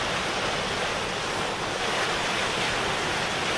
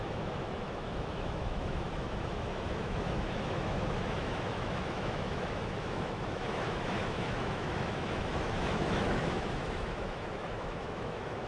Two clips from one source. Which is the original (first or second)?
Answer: first